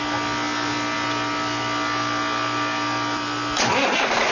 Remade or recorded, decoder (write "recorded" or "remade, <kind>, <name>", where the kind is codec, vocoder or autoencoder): recorded